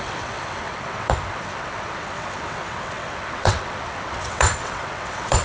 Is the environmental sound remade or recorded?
remade